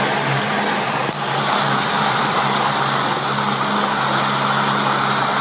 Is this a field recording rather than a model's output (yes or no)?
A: yes